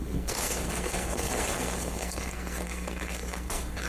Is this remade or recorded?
remade